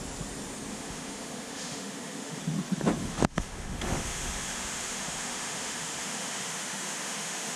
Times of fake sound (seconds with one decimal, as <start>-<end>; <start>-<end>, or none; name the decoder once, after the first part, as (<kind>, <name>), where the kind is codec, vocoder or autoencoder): 0.7-2.4 (autoencoder, DAC-VAE); 3.0-7.6